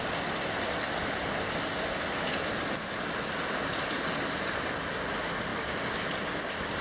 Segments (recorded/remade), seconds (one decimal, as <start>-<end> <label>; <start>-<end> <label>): 0.0-6.8 recorded